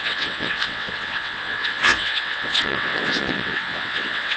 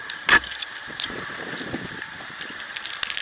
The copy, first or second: first